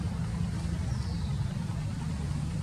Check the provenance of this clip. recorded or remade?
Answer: recorded